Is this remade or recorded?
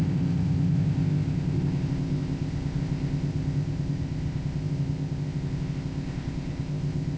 remade